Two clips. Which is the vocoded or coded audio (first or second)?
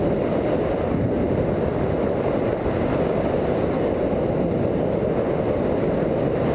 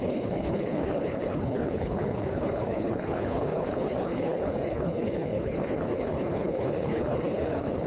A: second